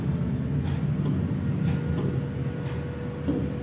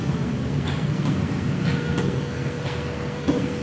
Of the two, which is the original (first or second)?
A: first